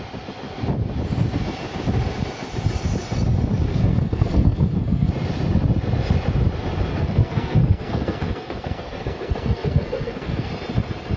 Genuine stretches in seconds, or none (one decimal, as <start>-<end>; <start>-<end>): 0.0-3.7; 5.1-6.9; 10.5-11.2